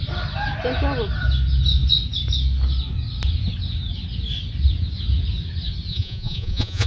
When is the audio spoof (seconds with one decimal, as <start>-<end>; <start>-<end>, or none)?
5.9-6.9